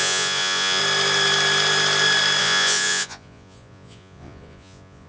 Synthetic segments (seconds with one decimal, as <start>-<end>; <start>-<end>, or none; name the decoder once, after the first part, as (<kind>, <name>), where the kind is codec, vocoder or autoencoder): 0.0-0.8 (vocoder, Vocos); 2.4-5.1